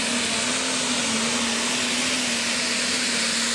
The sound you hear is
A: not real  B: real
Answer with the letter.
B